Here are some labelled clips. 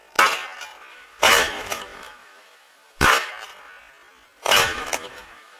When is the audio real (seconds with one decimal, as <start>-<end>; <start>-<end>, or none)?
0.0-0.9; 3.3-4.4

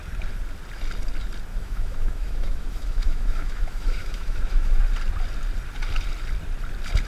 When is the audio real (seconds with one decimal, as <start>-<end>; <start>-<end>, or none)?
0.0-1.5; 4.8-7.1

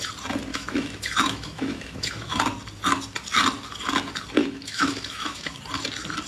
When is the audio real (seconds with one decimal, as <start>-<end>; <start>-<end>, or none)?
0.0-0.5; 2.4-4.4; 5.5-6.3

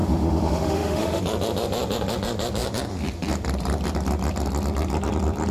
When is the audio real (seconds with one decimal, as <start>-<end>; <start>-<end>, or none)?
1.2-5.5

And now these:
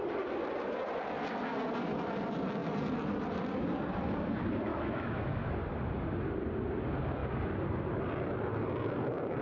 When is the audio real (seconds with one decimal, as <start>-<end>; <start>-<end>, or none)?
0.0-4.7; 5.5-9.4

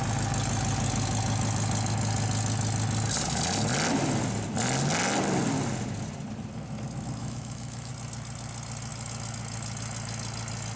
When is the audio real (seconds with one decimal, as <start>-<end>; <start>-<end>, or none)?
0.0-7.2; 7.9-10.8

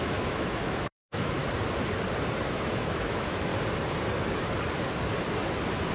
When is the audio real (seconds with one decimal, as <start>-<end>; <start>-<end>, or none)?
1.4-2.4; 3.5-5.9